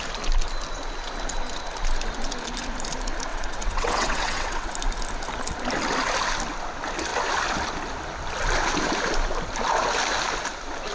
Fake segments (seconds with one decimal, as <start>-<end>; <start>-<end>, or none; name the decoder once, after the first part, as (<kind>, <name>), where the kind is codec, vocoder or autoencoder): 3.3-4.7 (vocoder, WaveNeXt)